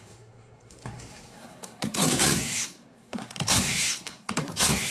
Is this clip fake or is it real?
fake